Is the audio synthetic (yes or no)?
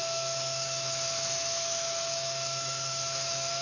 yes